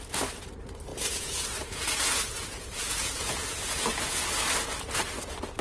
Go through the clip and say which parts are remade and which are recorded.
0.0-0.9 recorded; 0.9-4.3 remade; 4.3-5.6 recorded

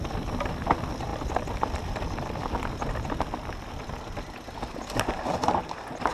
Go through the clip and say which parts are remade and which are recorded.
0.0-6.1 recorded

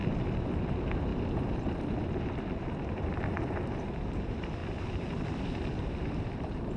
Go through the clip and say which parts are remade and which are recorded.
0.0-0.7 recorded; 0.7-1.1 remade; 1.1-2.0 recorded; 2.0-6.8 remade

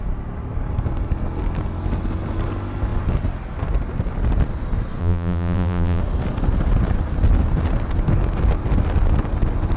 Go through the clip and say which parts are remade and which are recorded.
0.0-5.0 recorded; 5.0-6.0 remade; 6.0-9.8 recorded

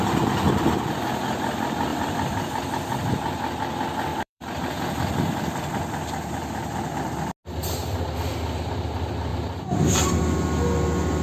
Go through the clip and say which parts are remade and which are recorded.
0.0-1.9 recorded; 1.9-3.1 remade; 3.1-4.1 recorded; 4.1-4.6 remade; 4.6-11.2 recorded

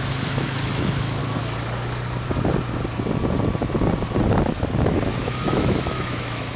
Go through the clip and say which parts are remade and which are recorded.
0.0-1.2 remade; 1.2-5.2 recorded; 5.2-6.6 remade

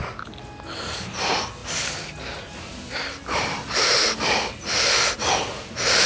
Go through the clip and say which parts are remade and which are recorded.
0.0-6.1 recorded